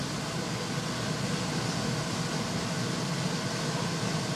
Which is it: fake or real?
real